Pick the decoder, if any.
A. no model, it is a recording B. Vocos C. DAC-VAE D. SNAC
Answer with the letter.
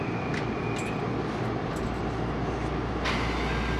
A